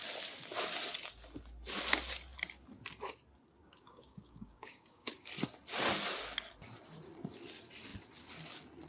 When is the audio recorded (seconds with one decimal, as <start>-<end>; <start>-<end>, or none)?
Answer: 0.0-3.6; 5.3-8.9